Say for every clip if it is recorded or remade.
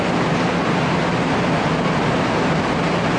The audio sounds recorded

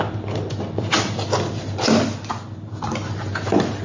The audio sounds recorded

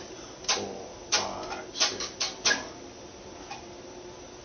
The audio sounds recorded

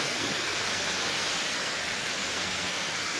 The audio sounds remade